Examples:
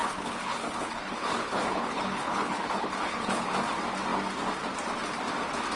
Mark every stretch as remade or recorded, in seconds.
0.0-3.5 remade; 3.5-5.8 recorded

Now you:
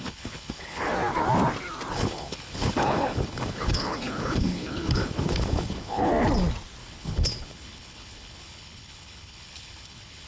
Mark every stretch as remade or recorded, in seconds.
0.0-0.9 remade; 0.9-1.9 recorded; 1.9-6.1 remade; 6.1-6.8 recorded; 6.8-10.3 remade

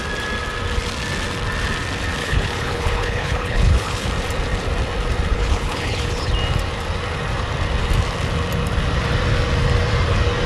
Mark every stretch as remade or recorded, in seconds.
0.0-2.2 recorded; 2.2-4.1 remade; 4.1-5.3 recorded; 5.3-6.3 remade; 6.3-10.5 recorded